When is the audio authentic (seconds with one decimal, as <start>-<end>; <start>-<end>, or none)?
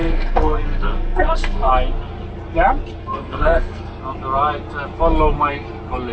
1.7-3.0; 4.0-6.1